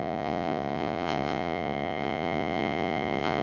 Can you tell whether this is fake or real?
fake